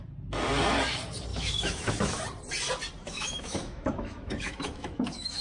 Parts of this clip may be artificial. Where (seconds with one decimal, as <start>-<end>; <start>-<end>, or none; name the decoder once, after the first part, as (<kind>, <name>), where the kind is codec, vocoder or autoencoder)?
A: 1.3-2.2 (autoencoder, DAC-VAE); 3.0-5.4

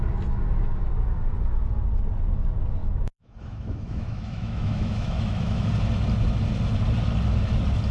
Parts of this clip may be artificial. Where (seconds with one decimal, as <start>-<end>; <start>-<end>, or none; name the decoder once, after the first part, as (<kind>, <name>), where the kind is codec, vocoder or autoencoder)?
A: 2.8-5.7 (autoencoder, DAC-VAE)

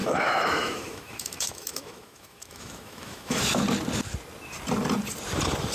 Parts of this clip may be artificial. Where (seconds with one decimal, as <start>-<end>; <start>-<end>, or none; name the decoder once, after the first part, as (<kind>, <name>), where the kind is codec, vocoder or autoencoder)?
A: 0.0-3.4 (autoencoder, DAC-VAE)

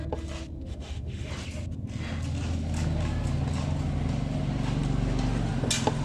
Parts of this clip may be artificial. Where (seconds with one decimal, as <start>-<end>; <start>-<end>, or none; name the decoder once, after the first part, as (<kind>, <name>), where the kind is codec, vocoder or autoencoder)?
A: 0.7-1.3 (autoencoder, DAC-VAE)

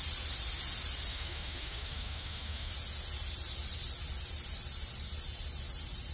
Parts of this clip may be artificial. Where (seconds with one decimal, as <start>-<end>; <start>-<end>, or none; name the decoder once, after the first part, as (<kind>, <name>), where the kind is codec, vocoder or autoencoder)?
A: 1.1-2.7 (autoencoder, DAC-VAE)

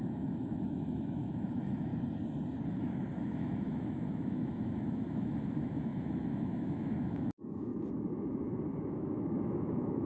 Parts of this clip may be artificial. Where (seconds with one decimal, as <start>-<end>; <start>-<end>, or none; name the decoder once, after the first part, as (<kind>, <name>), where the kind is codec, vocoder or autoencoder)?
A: 0.0-1.9 (autoencoder, DAC-VAE); 2.8-7.7; 8.9-10.1